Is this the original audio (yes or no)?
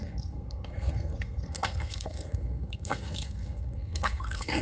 no